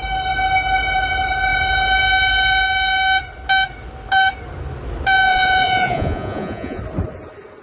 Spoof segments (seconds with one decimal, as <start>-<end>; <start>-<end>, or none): 5.3-6.8